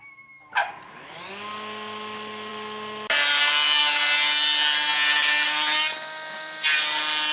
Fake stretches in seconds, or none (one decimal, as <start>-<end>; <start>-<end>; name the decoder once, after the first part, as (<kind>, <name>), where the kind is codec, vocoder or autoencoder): none